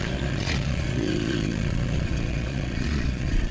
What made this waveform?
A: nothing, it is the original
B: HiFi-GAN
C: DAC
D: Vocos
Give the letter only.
D